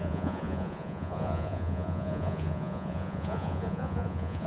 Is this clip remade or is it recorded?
remade